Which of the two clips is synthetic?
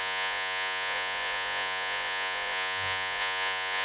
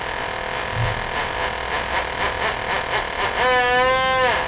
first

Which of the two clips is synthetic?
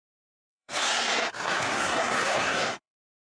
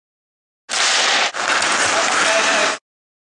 first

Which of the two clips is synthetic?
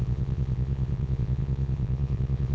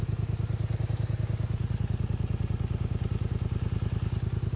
first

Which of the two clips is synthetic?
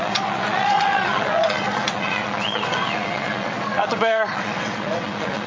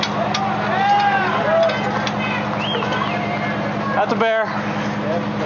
first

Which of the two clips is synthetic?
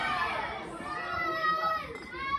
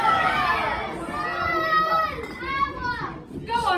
first